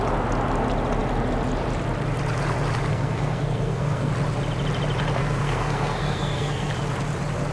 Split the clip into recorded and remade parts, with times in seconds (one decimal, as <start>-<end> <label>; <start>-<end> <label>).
0.0-2.9 recorded; 2.9-4.1 remade; 4.1-5.2 recorded; 5.2-6.7 remade; 6.7-7.5 recorded